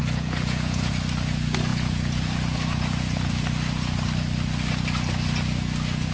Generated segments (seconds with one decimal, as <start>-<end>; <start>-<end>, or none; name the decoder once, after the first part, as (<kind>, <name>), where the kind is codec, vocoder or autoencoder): 0.0-0.9 (vocoder, Vocos); 1.7-3.3